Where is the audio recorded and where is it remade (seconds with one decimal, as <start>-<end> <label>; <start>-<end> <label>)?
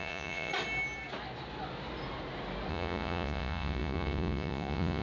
0.0-0.5 remade; 0.5-2.7 recorded; 2.7-5.0 remade